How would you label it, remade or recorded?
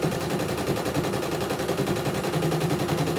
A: remade